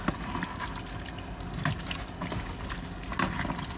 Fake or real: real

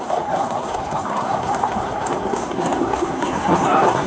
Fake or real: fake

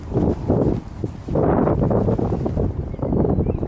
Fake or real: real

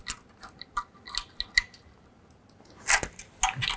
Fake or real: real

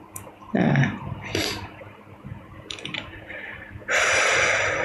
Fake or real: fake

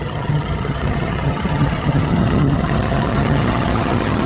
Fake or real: fake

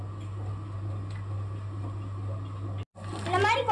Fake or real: real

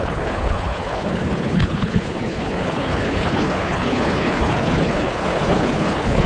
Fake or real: fake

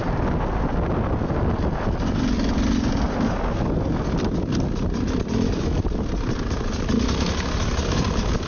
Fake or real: real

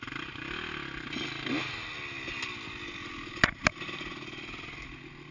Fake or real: real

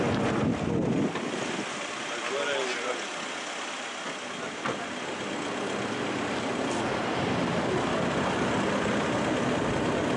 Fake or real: real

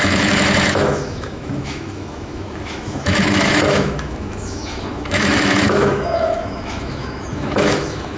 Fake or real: fake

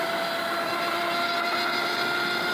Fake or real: real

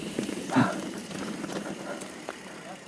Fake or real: fake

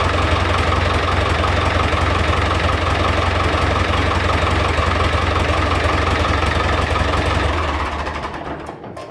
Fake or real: real